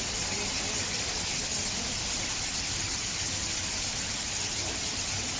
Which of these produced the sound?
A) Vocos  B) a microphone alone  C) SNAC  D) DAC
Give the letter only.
B